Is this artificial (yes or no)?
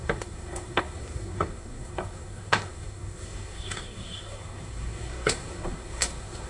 yes